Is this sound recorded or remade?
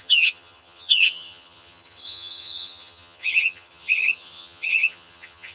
remade